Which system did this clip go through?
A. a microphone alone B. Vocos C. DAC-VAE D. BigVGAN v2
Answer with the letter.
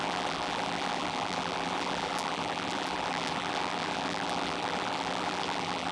D